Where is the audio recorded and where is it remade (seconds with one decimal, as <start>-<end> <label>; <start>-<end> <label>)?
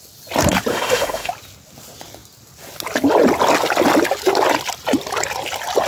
0.0-0.7 recorded; 0.7-1.3 remade; 1.3-5.9 recorded